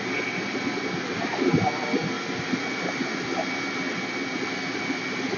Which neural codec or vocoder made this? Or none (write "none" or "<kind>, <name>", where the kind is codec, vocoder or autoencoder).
none